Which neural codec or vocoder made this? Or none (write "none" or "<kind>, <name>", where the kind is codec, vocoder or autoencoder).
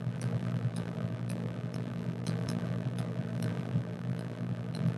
vocoder, BigVGAN v2